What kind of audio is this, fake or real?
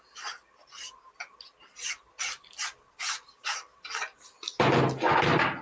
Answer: real